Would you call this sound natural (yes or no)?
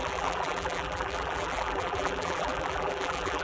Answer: no